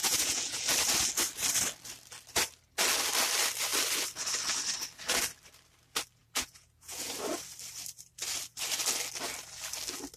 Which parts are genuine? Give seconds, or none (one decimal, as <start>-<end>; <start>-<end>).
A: 0.6-6.2; 7.1-10.2